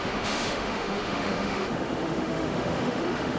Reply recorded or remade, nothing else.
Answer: remade